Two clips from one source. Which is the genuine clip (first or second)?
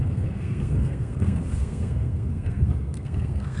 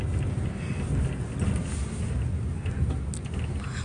second